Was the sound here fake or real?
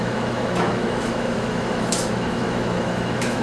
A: fake